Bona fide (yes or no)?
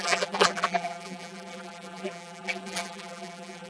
no